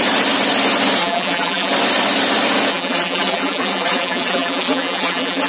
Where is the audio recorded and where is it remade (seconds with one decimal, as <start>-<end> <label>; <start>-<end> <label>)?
0.0-1.0 recorded; 1.0-1.7 remade; 1.7-2.7 recorded; 2.7-5.5 remade